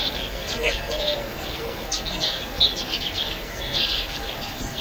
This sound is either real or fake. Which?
fake